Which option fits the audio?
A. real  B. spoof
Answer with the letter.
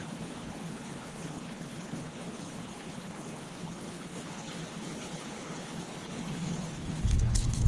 B